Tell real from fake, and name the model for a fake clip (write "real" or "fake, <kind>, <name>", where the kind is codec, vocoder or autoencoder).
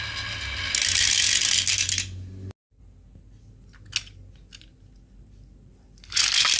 real